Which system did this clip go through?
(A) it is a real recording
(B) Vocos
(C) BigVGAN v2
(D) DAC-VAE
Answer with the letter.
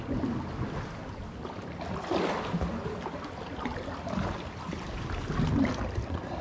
A